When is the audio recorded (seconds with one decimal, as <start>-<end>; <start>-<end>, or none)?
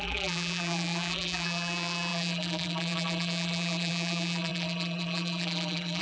none